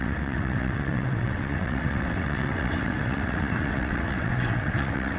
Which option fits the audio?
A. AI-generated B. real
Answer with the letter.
A